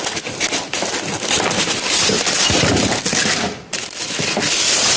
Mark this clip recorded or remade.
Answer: recorded